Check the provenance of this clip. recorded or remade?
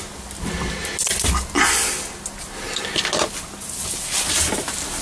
recorded